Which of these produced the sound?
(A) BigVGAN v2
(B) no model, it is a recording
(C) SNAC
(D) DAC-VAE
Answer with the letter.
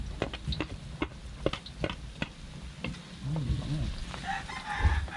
B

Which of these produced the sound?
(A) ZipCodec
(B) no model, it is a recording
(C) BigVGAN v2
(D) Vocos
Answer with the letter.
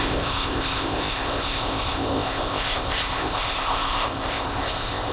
A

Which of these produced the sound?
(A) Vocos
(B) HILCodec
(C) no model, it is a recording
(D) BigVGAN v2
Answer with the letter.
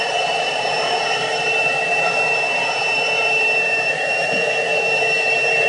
D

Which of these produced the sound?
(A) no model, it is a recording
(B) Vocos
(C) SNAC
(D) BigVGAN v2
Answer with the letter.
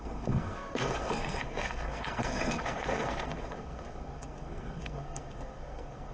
C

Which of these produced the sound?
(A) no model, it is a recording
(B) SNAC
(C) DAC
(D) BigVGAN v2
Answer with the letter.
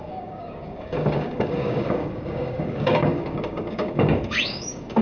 C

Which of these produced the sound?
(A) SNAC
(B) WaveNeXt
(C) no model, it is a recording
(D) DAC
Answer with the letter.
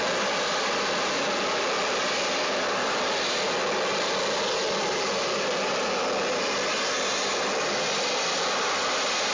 C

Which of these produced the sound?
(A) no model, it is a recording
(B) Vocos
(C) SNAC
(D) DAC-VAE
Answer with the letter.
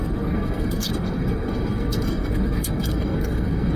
C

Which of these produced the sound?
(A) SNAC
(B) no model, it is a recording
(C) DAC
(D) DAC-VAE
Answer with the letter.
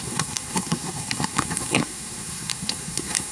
A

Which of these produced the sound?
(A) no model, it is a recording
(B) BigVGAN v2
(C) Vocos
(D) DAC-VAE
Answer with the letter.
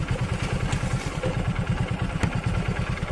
A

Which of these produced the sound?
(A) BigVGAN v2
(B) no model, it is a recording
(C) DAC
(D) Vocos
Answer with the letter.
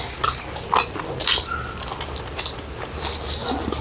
B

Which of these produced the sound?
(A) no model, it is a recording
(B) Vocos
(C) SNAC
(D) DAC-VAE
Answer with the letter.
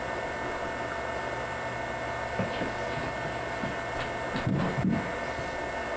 A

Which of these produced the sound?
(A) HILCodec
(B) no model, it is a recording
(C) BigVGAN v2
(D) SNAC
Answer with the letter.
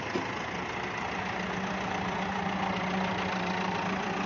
B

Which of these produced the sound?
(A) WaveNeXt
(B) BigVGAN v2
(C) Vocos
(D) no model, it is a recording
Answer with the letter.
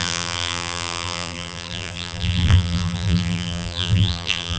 B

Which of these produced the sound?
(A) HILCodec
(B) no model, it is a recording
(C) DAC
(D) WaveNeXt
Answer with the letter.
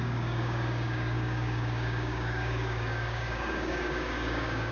C